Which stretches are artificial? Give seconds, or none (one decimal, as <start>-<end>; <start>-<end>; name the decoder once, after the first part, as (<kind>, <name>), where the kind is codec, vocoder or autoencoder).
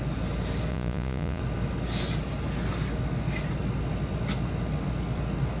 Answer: 0.7-1.4 (vocoder, Vocos)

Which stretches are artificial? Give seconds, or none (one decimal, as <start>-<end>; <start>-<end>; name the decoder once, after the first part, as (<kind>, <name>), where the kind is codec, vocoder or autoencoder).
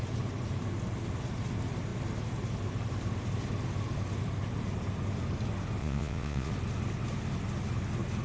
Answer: 5.8-6.5 (vocoder, Vocos)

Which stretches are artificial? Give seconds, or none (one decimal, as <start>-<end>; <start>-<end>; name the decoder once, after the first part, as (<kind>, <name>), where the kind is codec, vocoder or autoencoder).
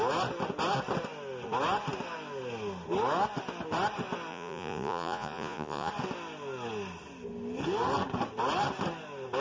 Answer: 4.3-5.9 (vocoder, Vocos)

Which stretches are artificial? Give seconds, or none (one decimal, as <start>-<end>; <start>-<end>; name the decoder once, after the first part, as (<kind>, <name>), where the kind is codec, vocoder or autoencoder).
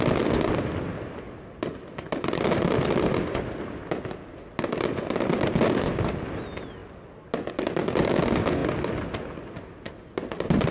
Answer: none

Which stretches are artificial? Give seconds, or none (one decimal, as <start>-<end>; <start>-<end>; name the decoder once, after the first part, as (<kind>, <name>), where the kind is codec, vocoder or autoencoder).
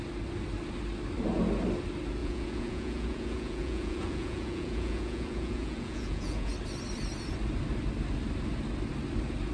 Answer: 2.2-6.5 (vocoder, Vocos)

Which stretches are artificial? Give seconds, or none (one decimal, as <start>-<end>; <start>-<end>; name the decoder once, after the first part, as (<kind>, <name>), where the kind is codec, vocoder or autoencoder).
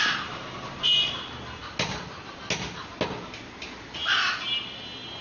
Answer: none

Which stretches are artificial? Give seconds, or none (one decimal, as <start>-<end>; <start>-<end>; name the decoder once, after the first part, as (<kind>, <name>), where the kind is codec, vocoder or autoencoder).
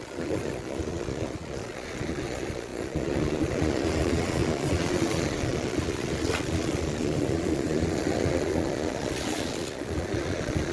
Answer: 0.0-10.7 (vocoder, Vocos)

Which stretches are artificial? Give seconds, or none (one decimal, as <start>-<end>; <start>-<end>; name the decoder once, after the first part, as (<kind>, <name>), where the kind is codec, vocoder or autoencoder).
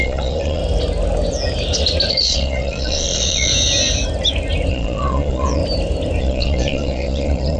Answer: 0.0-0.6 (vocoder, Vocos); 2.1-3.5; 4.7-5.6; 6.2-7.6